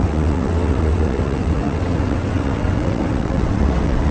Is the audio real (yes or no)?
no